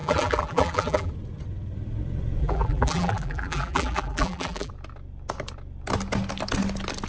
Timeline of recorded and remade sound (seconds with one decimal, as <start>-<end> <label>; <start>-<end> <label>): 0.0-1.1 remade; 1.1-2.4 recorded; 2.4-4.7 remade; 4.7-7.1 recorded